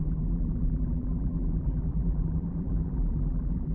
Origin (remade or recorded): remade